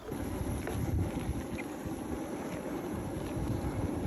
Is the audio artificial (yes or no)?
no